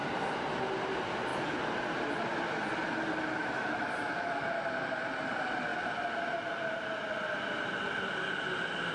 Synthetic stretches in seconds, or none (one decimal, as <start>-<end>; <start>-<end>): 3.4-4.5